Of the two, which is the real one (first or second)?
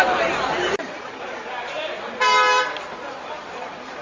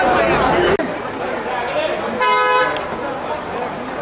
second